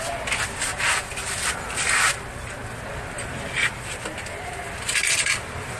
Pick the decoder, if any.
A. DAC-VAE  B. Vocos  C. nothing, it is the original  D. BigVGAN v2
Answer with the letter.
C